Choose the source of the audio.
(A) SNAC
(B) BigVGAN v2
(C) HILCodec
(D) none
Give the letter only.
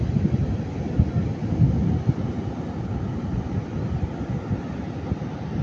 D